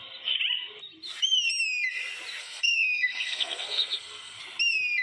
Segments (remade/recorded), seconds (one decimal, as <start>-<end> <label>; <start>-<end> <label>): 0.0-2.4 recorded; 2.4-4.4 remade; 4.4-5.0 recorded